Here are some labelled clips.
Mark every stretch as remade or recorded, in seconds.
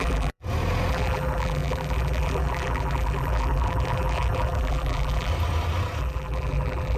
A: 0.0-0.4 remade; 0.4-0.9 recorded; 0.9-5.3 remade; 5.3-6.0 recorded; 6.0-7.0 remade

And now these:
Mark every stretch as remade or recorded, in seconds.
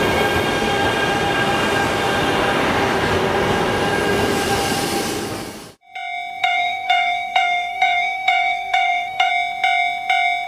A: 0.0-6.4 recorded; 6.4-9.3 remade; 9.3-10.5 recorded